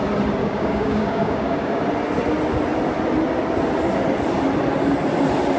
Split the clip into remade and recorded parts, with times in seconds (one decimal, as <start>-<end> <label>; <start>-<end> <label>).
0.0-0.4 recorded; 0.4-1.8 remade; 1.8-5.6 recorded